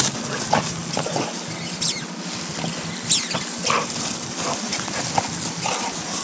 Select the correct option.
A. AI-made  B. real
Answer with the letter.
B